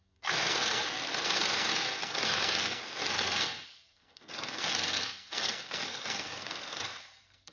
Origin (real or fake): fake